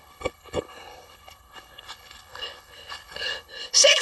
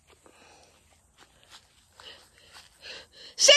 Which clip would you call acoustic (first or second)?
second